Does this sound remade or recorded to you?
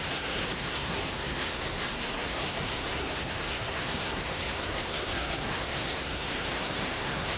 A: remade